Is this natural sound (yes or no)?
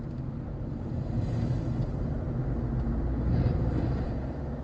yes